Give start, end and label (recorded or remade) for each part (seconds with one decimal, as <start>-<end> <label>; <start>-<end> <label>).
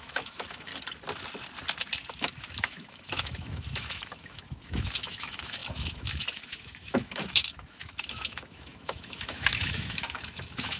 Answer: 0.0-0.7 remade; 0.7-2.1 recorded; 2.1-10.8 remade